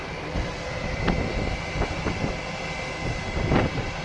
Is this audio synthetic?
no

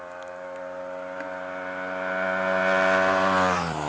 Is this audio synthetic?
no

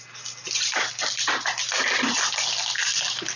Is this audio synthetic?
no